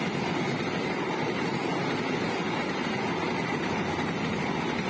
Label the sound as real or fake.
real